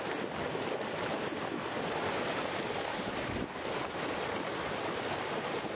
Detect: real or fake real